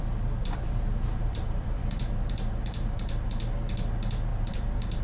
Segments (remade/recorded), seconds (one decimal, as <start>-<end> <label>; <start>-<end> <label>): 0.0-0.4 recorded; 0.4-3.4 remade; 3.4-4.3 recorded; 4.3-5.0 remade